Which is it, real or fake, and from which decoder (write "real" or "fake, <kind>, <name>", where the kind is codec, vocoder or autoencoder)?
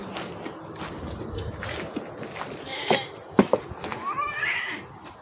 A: real